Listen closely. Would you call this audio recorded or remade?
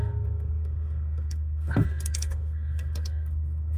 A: remade